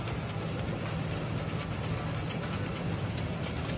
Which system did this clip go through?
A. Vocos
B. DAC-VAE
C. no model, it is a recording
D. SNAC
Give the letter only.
C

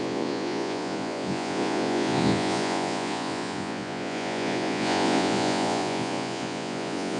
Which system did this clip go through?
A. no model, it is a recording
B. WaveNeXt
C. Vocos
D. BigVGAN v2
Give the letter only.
C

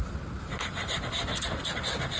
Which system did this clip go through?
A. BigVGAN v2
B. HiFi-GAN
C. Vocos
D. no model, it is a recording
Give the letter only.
D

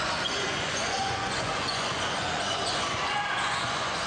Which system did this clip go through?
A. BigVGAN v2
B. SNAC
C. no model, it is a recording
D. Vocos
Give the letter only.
D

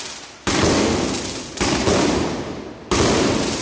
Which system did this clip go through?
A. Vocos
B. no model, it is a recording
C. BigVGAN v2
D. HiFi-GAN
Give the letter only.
B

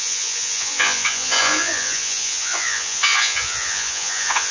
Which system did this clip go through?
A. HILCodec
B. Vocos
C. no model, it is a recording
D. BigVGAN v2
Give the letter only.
B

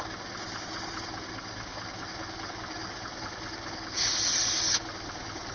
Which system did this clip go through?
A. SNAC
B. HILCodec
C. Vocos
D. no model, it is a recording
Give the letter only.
D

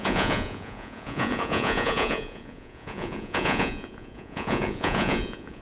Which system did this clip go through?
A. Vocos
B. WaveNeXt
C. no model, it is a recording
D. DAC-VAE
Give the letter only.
A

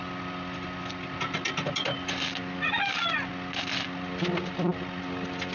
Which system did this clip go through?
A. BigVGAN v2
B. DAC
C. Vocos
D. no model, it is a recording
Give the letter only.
D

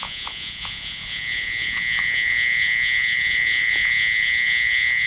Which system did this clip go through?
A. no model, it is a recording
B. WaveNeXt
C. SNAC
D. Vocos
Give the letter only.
D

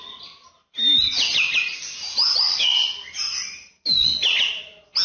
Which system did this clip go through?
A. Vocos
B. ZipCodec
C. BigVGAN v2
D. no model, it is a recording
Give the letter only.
D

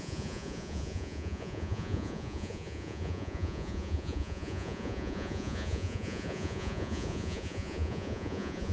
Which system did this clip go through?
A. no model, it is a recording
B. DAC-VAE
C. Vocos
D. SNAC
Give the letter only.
C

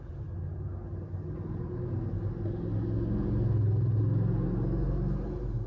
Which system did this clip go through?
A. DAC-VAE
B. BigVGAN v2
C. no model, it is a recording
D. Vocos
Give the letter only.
C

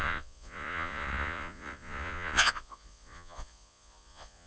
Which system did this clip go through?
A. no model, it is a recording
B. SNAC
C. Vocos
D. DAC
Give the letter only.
C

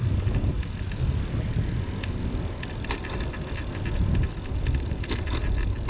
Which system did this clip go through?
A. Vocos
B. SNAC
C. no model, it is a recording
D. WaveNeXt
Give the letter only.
C